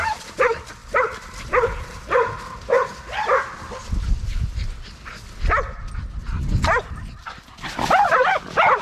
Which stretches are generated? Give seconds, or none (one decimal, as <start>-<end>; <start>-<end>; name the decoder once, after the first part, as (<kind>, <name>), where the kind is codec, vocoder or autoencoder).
none